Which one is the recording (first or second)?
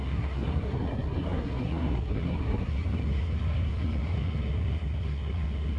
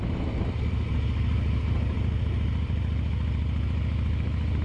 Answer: second